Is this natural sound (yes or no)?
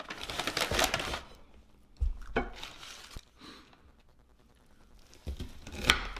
yes